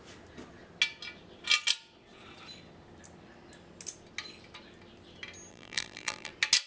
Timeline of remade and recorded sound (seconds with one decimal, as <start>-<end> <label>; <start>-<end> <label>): 0.0-5.5 recorded; 5.5-6.3 remade; 6.3-6.7 recorded